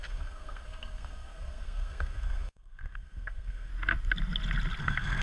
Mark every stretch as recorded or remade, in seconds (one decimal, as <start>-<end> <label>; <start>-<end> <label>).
0.0-3.7 remade; 3.7-4.8 recorded; 4.8-5.2 remade